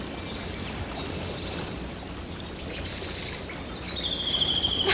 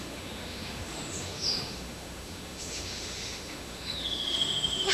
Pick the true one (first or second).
first